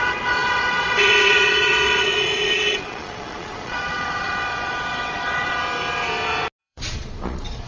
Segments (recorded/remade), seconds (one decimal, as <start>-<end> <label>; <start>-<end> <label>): 0.0-5.6 remade; 5.6-6.6 recorded; 6.6-7.7 remade